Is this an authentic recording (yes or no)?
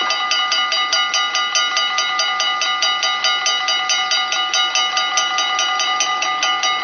yes